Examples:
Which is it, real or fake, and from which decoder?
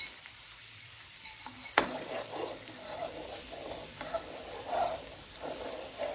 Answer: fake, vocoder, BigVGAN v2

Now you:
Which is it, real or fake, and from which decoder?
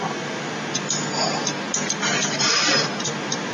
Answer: real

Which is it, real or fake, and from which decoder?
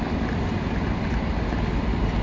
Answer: real